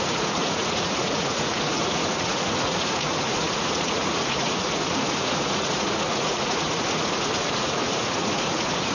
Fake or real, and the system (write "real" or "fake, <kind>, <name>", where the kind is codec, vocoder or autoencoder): fake, vocoder, Vocos